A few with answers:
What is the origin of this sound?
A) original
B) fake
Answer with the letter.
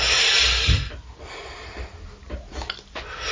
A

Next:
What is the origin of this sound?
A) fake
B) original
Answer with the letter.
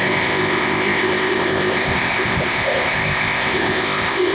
A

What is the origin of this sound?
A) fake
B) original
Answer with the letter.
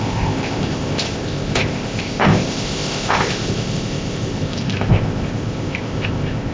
A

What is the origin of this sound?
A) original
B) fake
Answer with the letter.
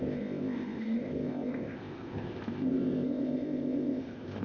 B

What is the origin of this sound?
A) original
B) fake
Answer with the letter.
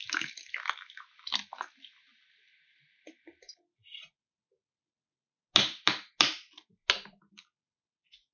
A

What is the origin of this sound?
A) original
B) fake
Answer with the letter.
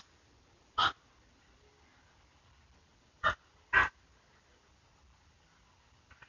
A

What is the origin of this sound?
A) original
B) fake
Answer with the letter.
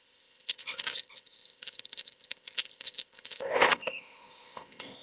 B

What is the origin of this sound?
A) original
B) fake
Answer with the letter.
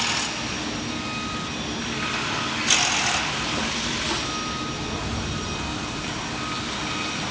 A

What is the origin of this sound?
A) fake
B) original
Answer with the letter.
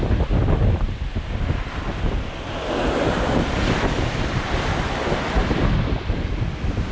B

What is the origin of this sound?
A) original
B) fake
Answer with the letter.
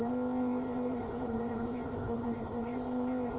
B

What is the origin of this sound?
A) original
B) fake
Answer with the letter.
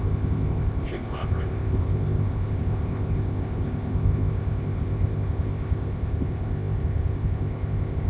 B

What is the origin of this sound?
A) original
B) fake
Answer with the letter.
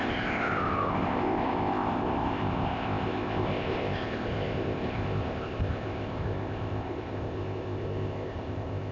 B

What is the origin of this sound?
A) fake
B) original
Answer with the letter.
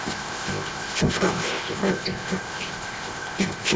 A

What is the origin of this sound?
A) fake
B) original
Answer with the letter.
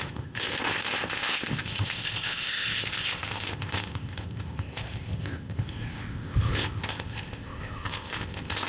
A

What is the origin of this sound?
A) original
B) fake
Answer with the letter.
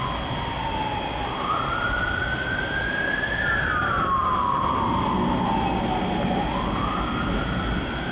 A